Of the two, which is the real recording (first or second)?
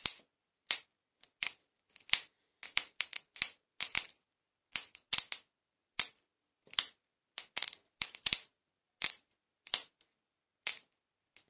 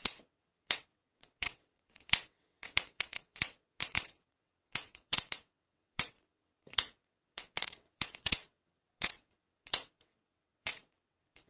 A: first